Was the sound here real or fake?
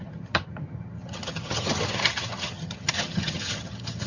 fake